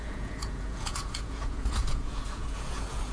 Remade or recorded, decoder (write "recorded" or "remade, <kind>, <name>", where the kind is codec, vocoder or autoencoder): remade, vocoder, Vocos